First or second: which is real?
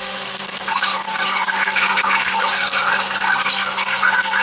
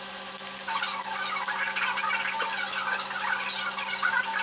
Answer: second